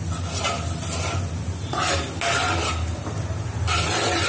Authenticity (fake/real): real